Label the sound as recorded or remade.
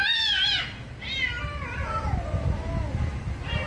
recorded